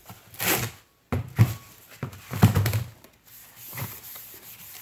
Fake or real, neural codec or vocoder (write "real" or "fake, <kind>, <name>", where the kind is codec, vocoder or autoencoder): real